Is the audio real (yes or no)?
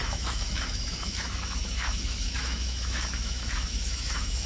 no